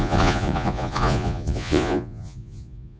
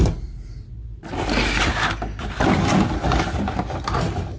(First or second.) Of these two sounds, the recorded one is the second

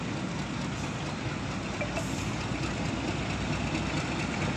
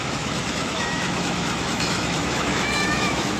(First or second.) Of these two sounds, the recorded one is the first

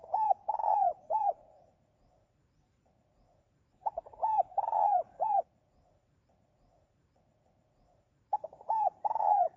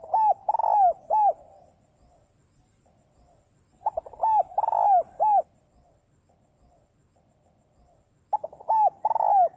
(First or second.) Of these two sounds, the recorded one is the second